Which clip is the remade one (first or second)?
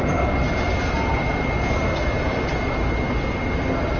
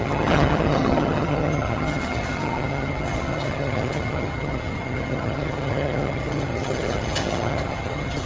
second